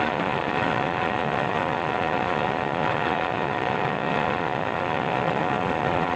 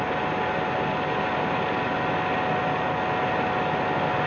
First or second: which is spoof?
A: first